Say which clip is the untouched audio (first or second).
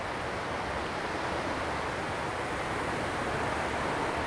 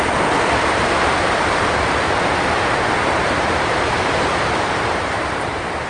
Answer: first